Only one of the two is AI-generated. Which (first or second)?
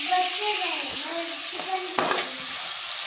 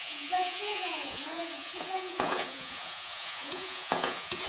second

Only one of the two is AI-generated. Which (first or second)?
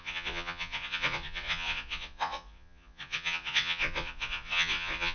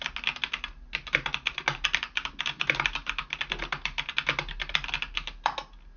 first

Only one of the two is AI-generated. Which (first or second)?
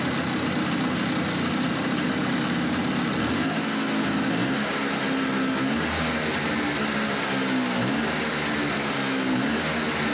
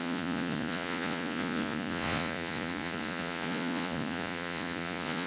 second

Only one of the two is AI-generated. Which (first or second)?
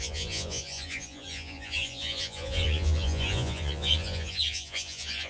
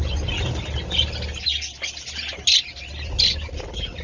first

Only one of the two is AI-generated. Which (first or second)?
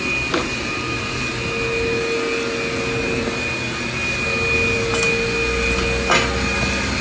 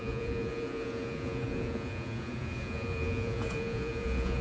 second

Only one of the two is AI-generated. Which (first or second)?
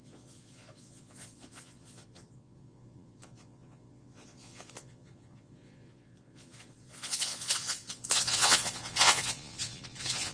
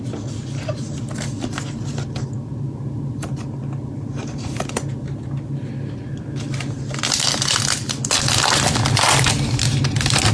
first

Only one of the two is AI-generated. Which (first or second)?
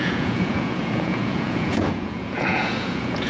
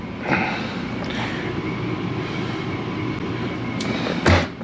first